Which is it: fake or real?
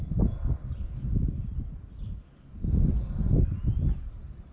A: real